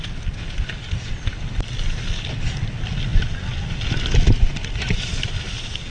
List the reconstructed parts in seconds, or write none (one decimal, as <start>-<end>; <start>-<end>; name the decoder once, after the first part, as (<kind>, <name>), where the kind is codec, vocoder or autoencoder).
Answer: none